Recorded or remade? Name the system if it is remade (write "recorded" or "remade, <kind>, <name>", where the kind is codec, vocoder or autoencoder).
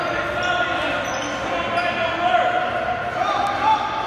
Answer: recorded